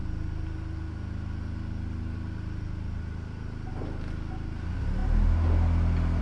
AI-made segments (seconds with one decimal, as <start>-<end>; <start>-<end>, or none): none